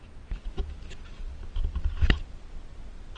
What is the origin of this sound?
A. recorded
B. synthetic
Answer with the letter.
A